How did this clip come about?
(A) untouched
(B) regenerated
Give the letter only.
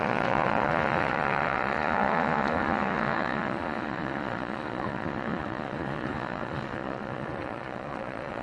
B